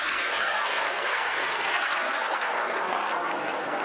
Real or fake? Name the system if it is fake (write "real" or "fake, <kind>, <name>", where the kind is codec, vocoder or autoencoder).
fake, codec, SNAC